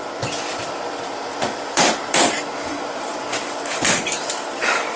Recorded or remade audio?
remade